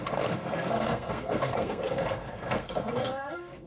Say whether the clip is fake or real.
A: fake